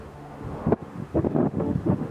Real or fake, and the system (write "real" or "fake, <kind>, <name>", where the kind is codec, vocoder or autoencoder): fake, autoencoder, DAC-VAE